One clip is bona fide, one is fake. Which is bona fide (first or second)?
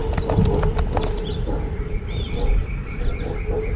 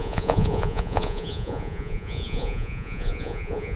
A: first